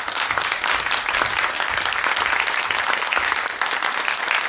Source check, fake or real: real